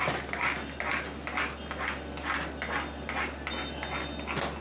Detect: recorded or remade recorded